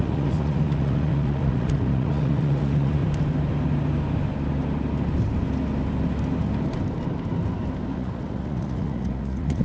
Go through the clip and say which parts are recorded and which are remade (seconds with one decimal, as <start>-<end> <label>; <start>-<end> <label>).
0.0-3.0 remade; 3.0-7.9 recorded; 7.9-9.6 remade